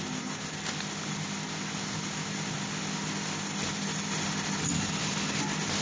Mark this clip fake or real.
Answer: real